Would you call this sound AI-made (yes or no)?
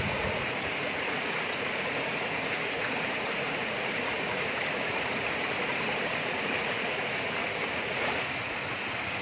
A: yes